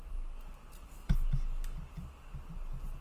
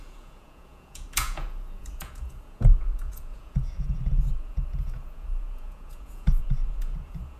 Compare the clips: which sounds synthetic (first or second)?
second